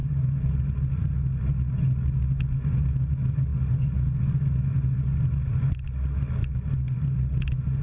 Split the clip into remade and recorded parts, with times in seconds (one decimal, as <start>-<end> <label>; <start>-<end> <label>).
0.0-7.8 recorded